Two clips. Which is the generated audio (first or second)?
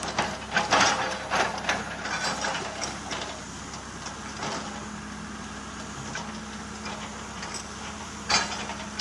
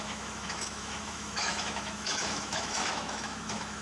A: second